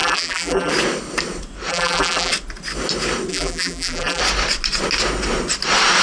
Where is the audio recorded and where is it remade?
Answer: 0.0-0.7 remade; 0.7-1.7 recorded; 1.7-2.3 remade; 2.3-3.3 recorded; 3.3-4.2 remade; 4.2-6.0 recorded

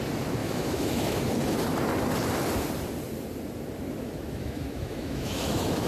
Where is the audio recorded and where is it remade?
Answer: 0.0-0.4 recorded; 0.4-1.2 remade; 1.2-4.0 recorded; 4.0-5.9 remade

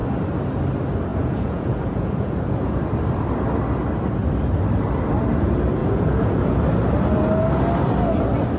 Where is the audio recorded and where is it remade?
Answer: 0.0-1.1 recorded; 1.1-2.8 remade; 2.8-5.8 recorded; 5.8-6.5 remade; 6.5-8.6 recorded

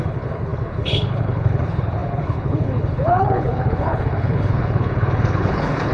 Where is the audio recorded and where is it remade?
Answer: 0.0-5.9 remade

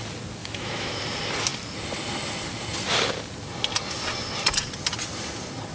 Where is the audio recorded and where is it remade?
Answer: 0.0-0.4 recorded; 0.4-1.0 remade; 1.0-5.7 recorded

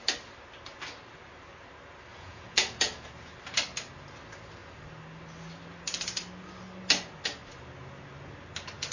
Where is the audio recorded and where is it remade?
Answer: 0.0-2.1 recorded; 2.1-3.1 remade; 3.1-8.9 recorded

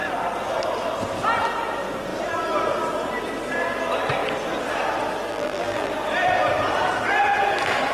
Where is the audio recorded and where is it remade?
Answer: 0.0-5.3 recorded; 5.3-5.9 remade; 5.9-7.9 recorded